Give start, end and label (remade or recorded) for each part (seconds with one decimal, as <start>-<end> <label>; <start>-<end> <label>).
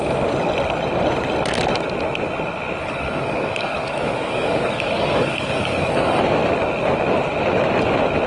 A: 0.0-2.8 recorded; 2.8-6.2 remade; 6.2-8.3 recorded